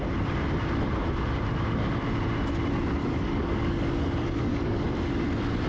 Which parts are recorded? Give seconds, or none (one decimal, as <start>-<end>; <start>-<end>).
0.0-3.0; 5.1-5.7